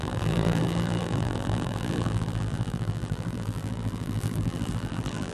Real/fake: fake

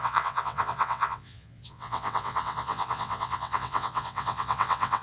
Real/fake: fake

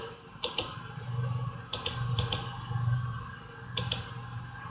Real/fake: fake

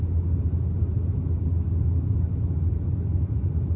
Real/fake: real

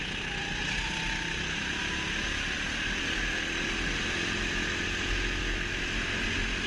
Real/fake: real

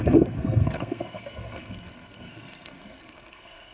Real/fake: fake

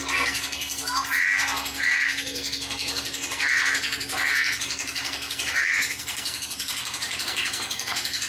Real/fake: fake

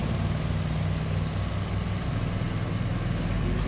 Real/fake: real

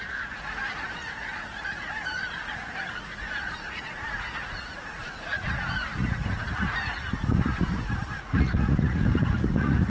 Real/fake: fake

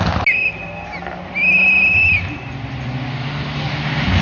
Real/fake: real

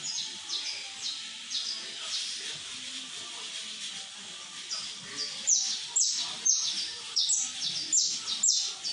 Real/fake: real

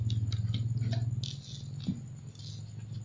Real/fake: real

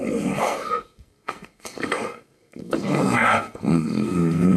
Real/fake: fake